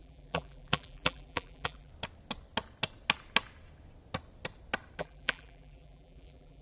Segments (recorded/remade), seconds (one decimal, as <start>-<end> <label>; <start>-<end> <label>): 0.0-1.9 remade; 1.9-5.0 recorded; 5.0-6.6 remade